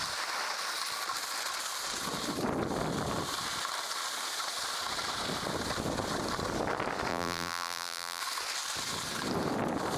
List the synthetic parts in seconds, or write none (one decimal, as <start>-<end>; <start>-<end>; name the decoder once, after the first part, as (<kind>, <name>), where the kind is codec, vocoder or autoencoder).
7.1-8.2 (vocoder, BigVGAN v2)